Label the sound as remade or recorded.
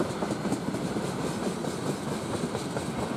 remade